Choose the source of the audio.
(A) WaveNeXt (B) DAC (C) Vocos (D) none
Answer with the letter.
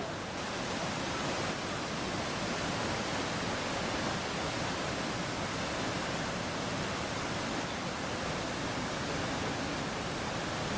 D